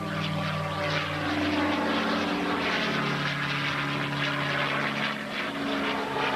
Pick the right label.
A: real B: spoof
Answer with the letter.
A